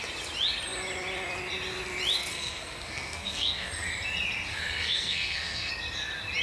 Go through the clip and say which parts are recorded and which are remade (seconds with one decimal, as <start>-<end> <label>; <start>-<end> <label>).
0.0-2.3 recorded; 2.3-3.7 remade; 3.7-4.5 recorded; 4.5-5.7 remade; 5.7-6.4 recorded